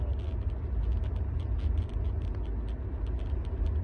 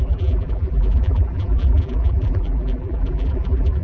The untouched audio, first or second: first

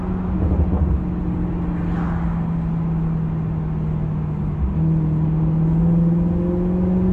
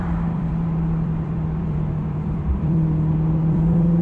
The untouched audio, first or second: first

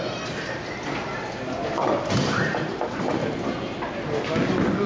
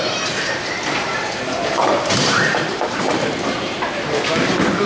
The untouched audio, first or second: first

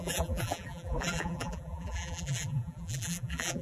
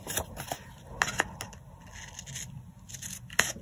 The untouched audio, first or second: second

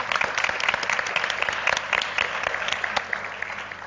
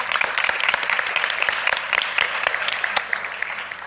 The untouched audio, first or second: first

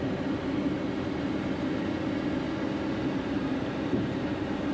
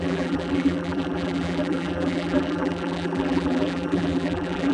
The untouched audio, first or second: first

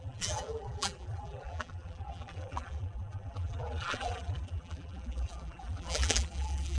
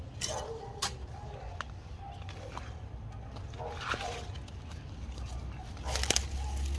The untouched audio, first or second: second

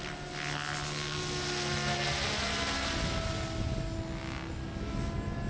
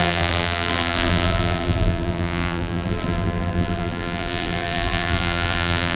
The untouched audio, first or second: first